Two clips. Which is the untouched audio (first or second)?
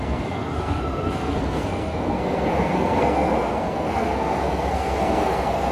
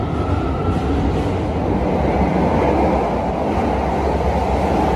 second